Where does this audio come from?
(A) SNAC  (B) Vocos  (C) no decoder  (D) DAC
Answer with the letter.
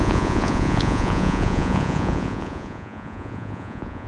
B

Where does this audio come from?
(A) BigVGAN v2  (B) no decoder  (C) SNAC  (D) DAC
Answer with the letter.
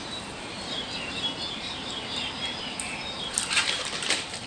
A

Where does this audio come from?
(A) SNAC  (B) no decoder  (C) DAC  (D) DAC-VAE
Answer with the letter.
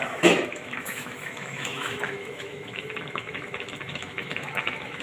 D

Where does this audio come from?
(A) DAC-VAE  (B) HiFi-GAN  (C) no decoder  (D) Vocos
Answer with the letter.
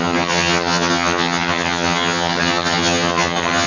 B